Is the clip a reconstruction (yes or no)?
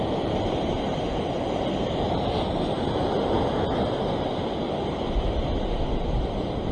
no